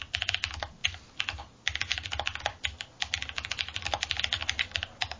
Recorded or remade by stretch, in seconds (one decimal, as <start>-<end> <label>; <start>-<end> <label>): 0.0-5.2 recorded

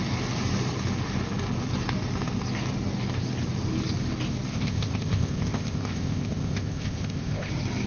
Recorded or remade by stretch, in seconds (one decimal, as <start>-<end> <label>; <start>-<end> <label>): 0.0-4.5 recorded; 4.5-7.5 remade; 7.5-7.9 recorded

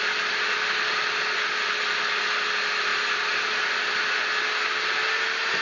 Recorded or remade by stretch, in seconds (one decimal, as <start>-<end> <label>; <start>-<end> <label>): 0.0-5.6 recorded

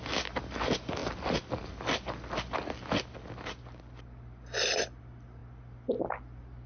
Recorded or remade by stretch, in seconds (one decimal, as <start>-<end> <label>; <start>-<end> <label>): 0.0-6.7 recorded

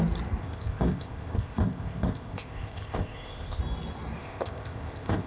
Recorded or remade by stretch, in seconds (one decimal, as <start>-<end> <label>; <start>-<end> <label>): 0.0-0.4 recorded; 0.4-3.6 remade; 3.6-4.2 recorded; 4.2-5.3 remade

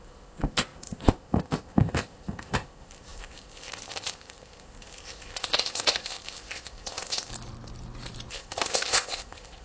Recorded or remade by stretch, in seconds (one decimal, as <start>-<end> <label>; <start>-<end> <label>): 0.0-7.3 remade; 7.3-8.3 recorded; 8.3-9.6 remade

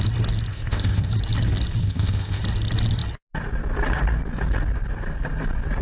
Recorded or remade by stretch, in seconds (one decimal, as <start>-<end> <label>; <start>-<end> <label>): 0.0-0.5 recorded; 0.5-1.1 remade; 1.1-1.8 recorded; 1.8-2.4 remade; 2.4-5.8 recorded